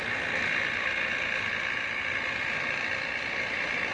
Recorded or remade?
recorded